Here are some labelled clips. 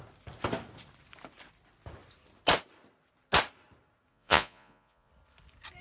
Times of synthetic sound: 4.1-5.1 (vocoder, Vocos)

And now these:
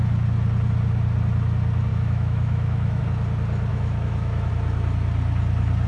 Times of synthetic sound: 1.9-3.0 (autoencoder, DAC-VAE); 3.7-4.5

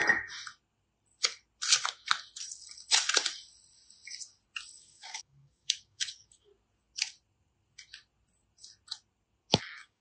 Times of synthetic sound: 4.8-6.5 (codec, DAC); 9.6-10.0

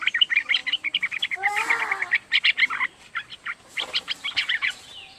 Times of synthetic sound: 4.4-5.2 (vocoder, Vocos)

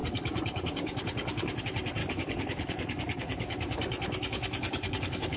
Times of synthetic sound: 0.0-1.6 (codec, DAC); 2.0-5.4

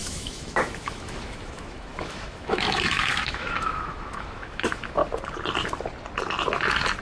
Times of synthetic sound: 0.0-5.0 (autoencoder, DAC-VAE)

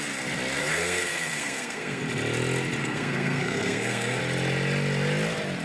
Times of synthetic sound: 0.6-2.0 (codec, SNAC); 2.8-4.2

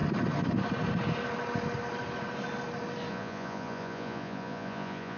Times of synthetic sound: 3.1-5.2 (vocoder, Vocos)